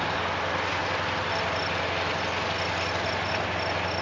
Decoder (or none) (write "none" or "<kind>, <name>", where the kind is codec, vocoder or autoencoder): none